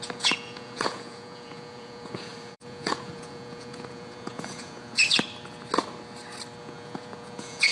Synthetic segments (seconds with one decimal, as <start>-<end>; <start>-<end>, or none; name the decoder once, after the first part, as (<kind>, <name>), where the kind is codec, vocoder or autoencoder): 0.0-5.0 (vocoder, Vocos); 6.6-7.7